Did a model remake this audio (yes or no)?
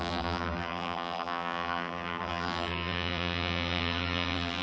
yes